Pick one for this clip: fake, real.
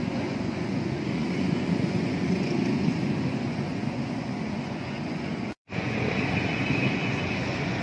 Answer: fake